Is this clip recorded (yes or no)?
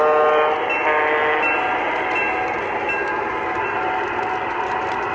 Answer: yes